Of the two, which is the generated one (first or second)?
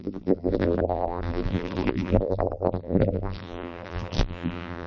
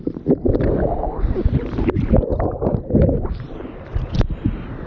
first